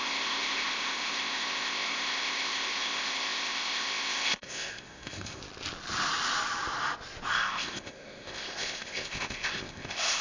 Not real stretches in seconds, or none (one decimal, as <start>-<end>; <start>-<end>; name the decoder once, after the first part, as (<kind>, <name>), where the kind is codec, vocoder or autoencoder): 0.0-5.4 (codec, ZipCodec); 7.3-10.2